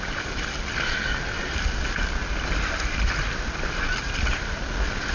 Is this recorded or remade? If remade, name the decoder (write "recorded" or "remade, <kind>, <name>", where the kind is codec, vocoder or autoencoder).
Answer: recorded